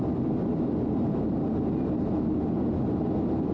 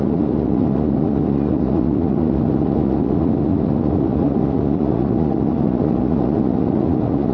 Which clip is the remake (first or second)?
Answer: second